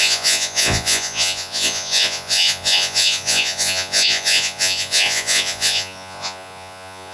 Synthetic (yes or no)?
yes